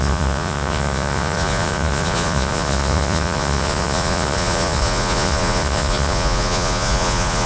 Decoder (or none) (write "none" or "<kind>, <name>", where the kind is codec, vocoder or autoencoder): vocoder, Vocos